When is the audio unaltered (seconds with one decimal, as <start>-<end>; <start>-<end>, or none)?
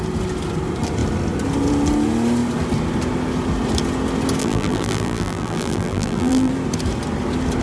0.0-4.4; 6.5-7.6